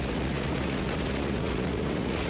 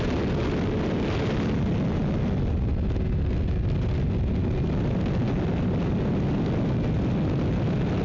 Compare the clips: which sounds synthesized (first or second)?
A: first